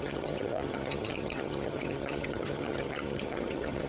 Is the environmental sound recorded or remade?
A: remade